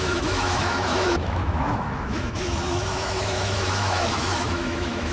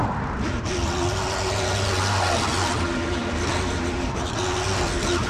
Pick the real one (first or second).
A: second